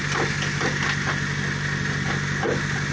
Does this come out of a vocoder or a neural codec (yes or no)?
no